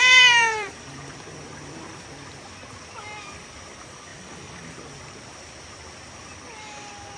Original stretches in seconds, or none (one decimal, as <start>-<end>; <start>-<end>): 1.1-4.1; 4.7-7.2